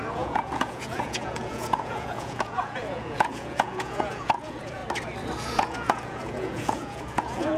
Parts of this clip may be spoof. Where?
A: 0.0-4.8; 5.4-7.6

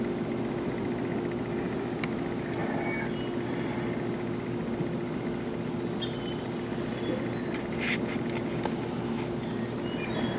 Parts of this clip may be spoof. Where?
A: none

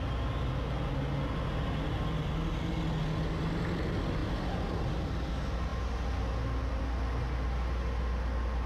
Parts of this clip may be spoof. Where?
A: none

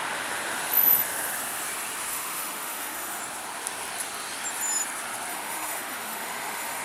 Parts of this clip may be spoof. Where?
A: 2.1-3.2; 5.3-6.8

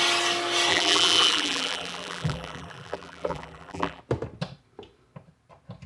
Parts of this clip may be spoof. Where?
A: 0.7-4.0